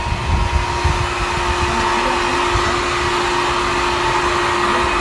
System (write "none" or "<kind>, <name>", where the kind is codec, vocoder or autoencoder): none